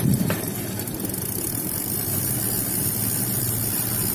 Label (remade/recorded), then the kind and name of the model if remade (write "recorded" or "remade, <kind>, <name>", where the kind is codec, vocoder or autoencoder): remade, vocoder, BigVGAN v2